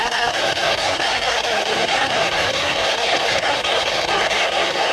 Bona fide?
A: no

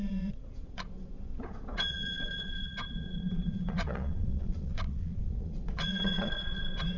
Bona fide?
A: no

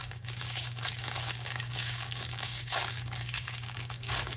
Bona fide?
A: no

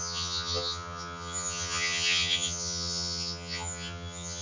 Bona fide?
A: no